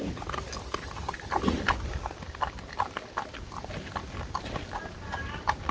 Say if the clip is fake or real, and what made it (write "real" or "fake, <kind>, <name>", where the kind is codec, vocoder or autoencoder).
real